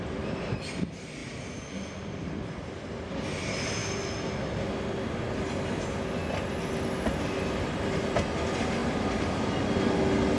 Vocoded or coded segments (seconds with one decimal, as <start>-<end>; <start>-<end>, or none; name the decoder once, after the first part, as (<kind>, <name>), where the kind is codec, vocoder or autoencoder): none